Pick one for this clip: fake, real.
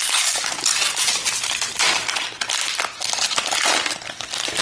real